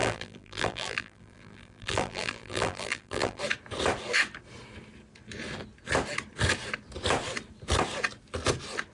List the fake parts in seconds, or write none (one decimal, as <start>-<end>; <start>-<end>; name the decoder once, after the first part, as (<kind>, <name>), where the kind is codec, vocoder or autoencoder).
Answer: 0.0-3.4 (vocoder, BigVGAN v2)